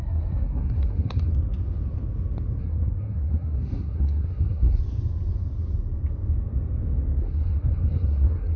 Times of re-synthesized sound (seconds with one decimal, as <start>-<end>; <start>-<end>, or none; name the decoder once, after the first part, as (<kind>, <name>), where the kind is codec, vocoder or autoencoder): 0.0-1.3 (codec, SNAC); 2.6-4.8; 7.2-8.6